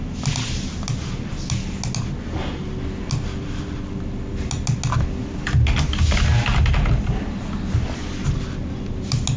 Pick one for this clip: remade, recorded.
recorded